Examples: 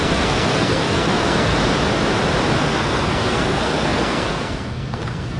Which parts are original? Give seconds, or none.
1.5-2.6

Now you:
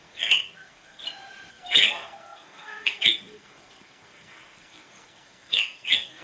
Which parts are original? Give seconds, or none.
1.0-1.5

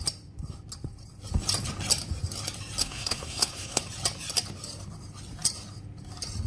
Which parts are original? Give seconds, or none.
0.0-2.8; 3.8-6.5

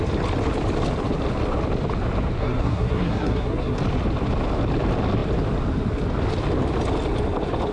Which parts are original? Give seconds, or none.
0.0-2.4; 3.8-7.7

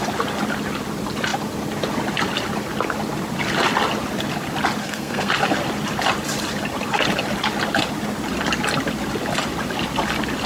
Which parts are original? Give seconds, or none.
0.0-4.8; 5.3-10.5